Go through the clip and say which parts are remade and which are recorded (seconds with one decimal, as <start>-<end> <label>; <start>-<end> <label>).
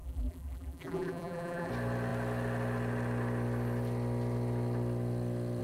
0.0-1.7 remade; 1.7-5.6 recorded